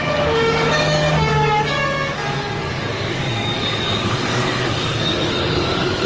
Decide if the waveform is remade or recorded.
remade